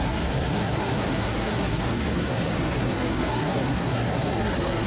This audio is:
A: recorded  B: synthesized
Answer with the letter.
B